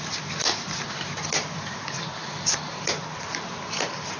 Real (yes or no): yes